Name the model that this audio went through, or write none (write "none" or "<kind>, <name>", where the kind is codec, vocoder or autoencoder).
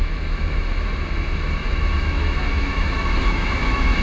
autoencoder, DAC-VAE